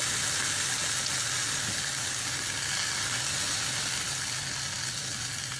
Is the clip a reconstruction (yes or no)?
no